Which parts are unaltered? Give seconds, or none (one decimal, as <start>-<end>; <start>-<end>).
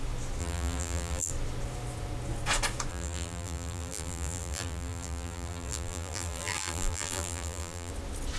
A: 0.0-0.4; 1.3-2.9; 7.9-8.4